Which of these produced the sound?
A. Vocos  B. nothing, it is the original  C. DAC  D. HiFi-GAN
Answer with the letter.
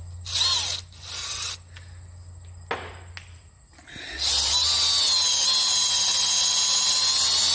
B